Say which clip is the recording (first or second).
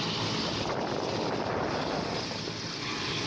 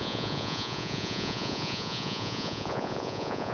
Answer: first